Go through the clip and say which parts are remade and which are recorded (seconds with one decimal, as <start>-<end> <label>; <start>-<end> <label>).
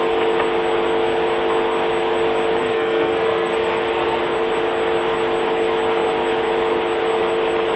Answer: 0.0-2.6 recorded; 2.6-4.2 remade; 4.2-7.8 recorded